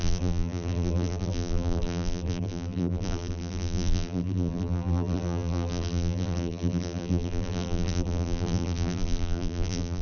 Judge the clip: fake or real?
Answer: fake